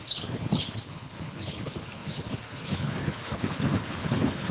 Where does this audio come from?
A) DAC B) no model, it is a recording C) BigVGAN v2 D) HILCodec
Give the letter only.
D